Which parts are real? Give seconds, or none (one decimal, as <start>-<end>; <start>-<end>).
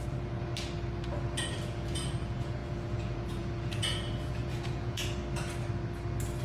0.5-1.4; 5.2-6.4